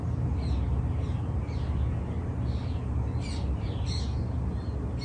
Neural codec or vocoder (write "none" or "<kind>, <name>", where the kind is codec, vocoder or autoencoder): none